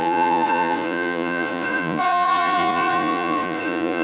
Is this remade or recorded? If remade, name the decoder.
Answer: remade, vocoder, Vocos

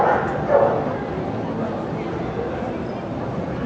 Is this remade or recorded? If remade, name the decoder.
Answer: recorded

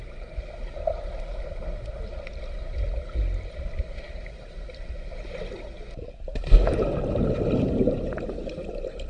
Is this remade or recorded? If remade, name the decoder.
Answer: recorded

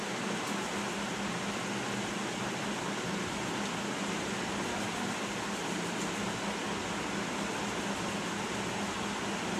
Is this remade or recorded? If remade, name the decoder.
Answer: recorded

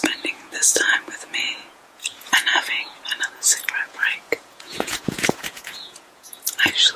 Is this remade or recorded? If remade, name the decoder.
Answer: remade, vocoder, Vocos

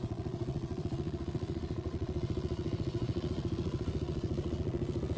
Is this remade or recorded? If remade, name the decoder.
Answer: remade, vocoder, Vocos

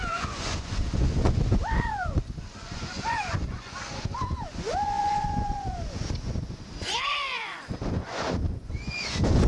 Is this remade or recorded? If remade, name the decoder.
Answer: remade, vocoder, Vocos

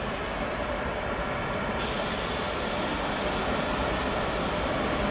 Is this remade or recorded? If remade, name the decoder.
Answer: recorded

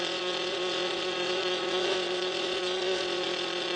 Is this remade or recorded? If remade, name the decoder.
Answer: remade, vocoder, Vocos